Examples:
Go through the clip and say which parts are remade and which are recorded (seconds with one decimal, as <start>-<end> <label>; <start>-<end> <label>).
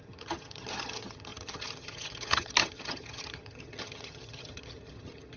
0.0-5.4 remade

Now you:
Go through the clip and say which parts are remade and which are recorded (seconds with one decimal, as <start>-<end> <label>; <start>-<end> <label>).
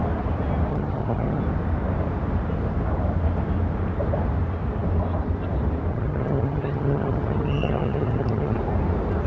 0.0-0.7 recorded; 0.7-1.4 remade; 1.4-5.9 recorded; 5.9-8.6 remade; 8.6-9.3 recorded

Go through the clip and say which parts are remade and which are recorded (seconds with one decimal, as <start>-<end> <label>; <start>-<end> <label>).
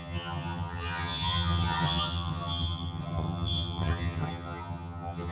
0.0-5.3 remade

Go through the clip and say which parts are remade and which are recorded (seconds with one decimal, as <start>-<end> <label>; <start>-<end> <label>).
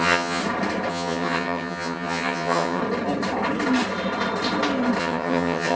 0.0-0.4 remade; 0.4-0.9 recorded; 0.9-2.8 remade; 2.8-5.0 recorded; 5.0-5.8 remade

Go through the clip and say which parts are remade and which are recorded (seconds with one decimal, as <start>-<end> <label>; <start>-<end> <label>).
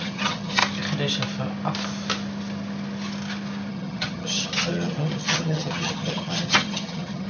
0.0-0.6 remade; 0.6-3.7 recorded; 3.7-7.3 remade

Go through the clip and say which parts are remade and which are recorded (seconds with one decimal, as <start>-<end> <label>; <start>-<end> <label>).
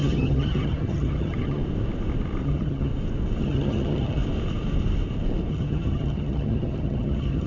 0.0-1.6 remade; 1.6-2.4 recorded; 2.4-2.9 remade; 2.9-3.4 recorded; 3.4-4.2 remade; 4.2-5.5 recorded; 5.5-7.5 remade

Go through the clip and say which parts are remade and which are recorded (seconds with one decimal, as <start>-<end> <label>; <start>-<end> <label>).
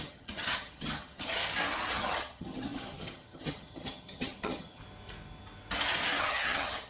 0.0-1.4 remade; 1.4-1.9 recorded; 1.9-4.8 remade; 4.8-6.2 recorded; 6.2-6.9 remade